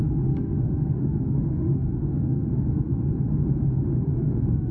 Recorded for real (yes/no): no